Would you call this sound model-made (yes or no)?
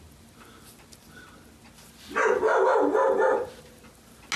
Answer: no